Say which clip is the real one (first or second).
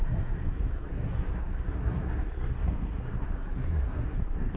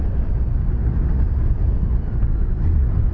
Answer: second